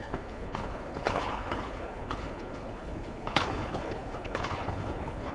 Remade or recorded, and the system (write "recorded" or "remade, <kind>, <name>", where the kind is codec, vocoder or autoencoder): remade, codec, HILCodec